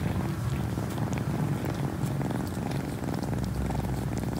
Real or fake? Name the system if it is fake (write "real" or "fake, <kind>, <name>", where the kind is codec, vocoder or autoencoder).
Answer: real